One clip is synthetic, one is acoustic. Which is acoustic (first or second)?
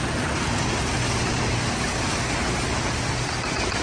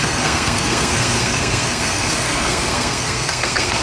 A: first